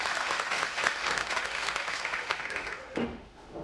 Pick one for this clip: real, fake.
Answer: fake